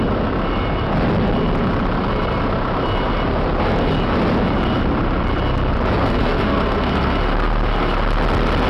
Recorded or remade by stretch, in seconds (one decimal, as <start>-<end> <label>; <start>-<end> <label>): 0.0-6.0 recorded; 6.0-7.2 remade; 7.2-8.7 recorded